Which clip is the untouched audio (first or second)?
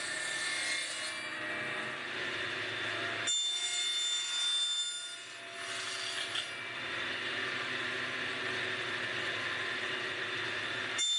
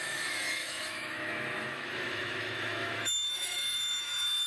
first